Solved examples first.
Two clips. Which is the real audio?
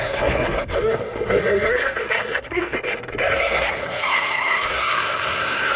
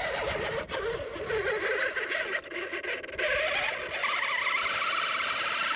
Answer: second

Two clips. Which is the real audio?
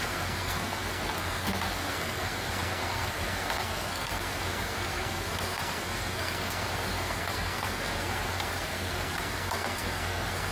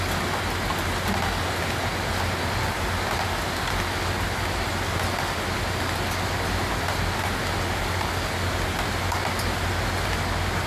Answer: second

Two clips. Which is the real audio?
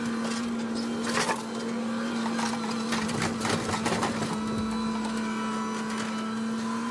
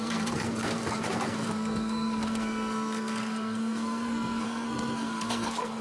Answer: first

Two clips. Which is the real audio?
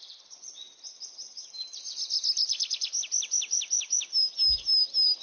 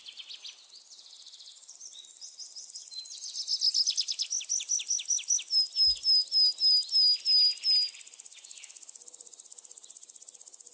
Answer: second